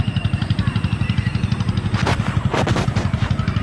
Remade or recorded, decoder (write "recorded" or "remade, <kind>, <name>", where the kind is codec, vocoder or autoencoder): recorded